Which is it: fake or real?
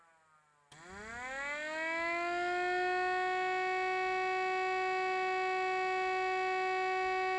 real